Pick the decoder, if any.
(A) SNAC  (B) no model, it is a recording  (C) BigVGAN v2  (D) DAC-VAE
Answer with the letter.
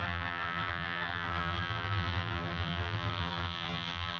C